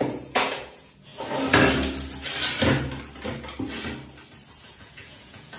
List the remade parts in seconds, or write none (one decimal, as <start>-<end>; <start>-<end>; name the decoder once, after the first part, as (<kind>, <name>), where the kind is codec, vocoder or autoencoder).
0.0-1.1 (vocoder, Vocos); 4.5-5.6